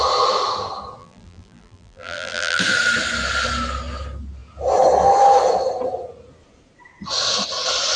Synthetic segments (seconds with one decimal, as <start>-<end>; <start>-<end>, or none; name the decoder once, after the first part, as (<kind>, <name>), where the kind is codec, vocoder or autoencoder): 1.0-2.6 (vocoder, BigVGAN v2)